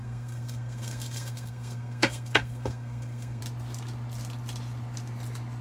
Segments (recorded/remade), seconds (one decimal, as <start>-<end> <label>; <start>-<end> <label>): 0.0-3.4 remade; 3.4-5.6 recorded